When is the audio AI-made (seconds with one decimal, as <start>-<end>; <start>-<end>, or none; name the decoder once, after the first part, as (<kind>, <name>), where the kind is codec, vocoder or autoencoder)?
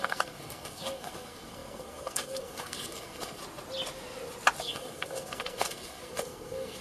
0.0-3.4 (codec, SNAC); 4.6-6.8